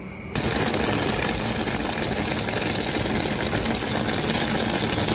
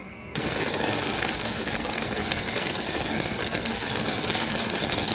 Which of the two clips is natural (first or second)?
first